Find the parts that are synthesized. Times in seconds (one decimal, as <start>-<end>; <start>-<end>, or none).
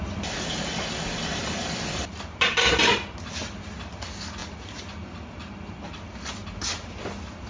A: none